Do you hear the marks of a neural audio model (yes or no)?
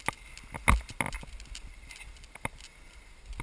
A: no